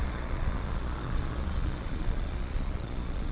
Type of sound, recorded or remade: remade